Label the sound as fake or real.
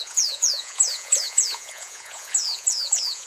fake